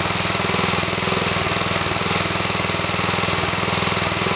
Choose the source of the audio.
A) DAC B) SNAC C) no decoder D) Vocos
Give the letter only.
C